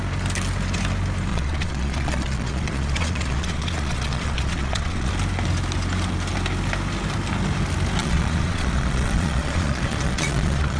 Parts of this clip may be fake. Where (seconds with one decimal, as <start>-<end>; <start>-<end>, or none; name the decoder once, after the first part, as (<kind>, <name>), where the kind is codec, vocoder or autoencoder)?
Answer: 1.3-5.1 (vocoder, Vocos); 8.0-10.8